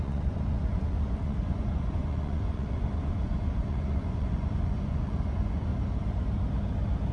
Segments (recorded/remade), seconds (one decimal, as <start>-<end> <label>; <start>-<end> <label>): 0.0-5.7 remade; 5.7-7.1 recorded